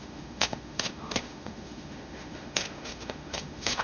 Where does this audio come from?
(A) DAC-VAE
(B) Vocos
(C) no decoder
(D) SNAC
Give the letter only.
A